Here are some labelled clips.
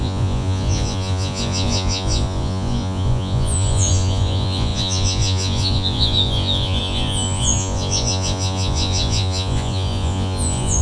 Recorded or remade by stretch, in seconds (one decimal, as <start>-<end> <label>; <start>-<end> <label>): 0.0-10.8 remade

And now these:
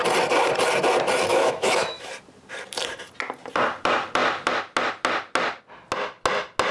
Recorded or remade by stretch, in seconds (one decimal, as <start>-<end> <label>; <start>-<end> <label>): 0.0-1.3 recorded; 1.3-2.1 remade; 2.1-6.7 recorded

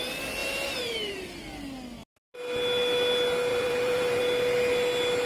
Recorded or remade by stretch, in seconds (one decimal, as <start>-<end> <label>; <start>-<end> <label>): 0.0-0.4 recorded; 0.4-1.4 remade; 1.4-3.5 recorded; 3.5-4.2 remade; 4.2-5.3 recorded

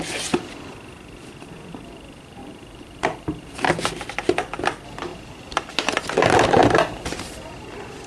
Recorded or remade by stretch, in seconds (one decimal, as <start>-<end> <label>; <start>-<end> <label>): 0.0-2.4 recorded; 2.4-3.6 remade; 3.6-5.1 recorded; 5.1-5.7 remade; 5.7-8.1 recorded

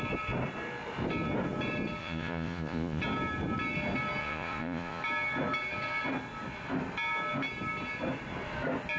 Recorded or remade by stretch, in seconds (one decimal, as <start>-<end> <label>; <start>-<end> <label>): 0.0-2.0 recorded; 2.0-3.0 remade; 3.0-4.2 recorded; 4.2-5.0 remade; 5.0-9.0 recorded

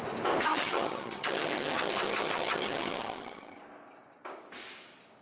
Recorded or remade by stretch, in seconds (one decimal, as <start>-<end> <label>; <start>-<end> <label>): 0.0-0.5 recorded; 0.5-3.6 remade; 3.6-5.2 recorded

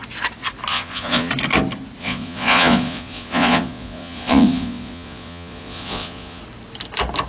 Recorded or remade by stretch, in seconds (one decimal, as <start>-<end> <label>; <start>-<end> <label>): 0.0-0.7 recorded; 0.7-1.3 remade; 1.3-2.0 recorded; 2.0-6.4 remade; 6.4-7.3 recorded

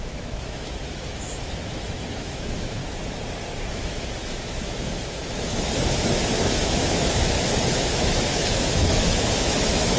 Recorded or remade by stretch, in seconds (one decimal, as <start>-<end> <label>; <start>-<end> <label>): 0.0-2.8 remade; 2.8-3.7 recorded; 3.7-10.0 remade